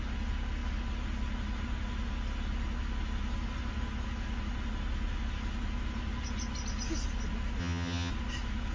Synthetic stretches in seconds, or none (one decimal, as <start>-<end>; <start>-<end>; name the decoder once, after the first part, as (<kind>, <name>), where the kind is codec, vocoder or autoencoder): 7.6-8.1 (vocoder, HiFi-GAN)